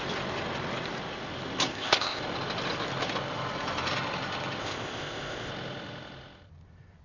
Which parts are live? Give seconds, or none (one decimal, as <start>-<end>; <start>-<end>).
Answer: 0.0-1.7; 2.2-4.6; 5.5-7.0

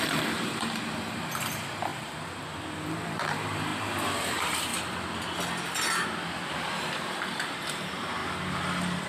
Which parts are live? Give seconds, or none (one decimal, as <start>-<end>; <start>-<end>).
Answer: 4.7-6.8; 8.2-9.1

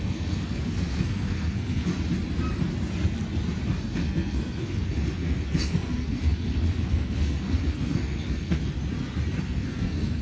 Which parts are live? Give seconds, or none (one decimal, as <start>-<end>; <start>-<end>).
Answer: 1.9-3.8; 8.6-9.4

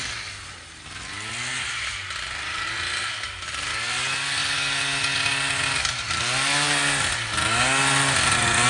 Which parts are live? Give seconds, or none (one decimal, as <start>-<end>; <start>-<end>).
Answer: 0.0-8.7

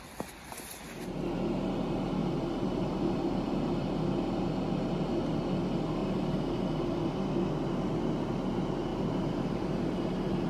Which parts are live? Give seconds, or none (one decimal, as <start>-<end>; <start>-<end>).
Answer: 0.0-2.2; 3.8-6.0; 7.3-8.9

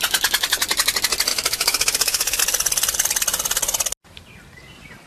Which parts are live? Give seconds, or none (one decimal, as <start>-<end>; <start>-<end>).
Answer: 0.0-1.3; 2.4-5.1

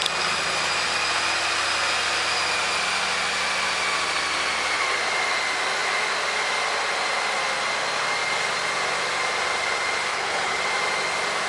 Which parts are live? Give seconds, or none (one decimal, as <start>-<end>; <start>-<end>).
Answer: 0.0-10.1; 10.6-11.5